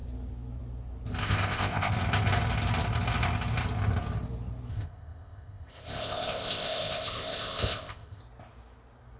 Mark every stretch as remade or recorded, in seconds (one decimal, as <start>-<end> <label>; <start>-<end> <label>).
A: 0.0-1.2 recorded; 1.2-1.9 remade; 1.9-4.7 recorded; 4.7-8.2 remade; 8.2-9.2 recorded

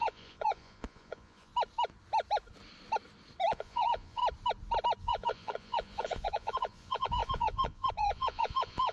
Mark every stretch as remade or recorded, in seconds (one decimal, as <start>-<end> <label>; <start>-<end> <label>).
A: 0.0-1.5 remade; 1.5-3.5 recorded; 3.5-4.2 remade; 4.2-5.0 recorded; 5.0-8.9 remade

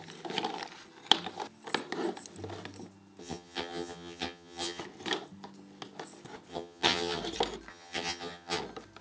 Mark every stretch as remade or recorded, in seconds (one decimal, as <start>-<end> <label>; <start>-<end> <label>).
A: 0.0-3.2 recorded; 3.2-4.8 remade; 4.8-6.5 recorded; 6.5-7.2 remade; 7.2-7.7 recorded; 7.7-8.6 remade; 8.6-9.0 recorded

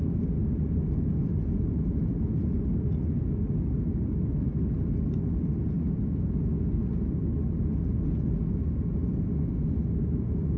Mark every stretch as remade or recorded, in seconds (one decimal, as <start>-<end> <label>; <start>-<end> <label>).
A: 0.0-10.6 recorded